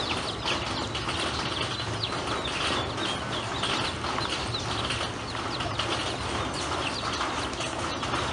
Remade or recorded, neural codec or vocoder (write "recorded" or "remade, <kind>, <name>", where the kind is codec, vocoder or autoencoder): recorded